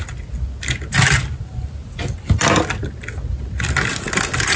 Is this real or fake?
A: real